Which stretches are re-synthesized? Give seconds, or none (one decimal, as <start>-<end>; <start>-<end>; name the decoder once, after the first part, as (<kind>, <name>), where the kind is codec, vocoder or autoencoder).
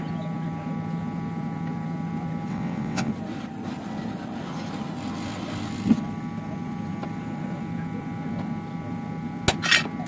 2.5-3.1 (vocoder, WaveNeXt)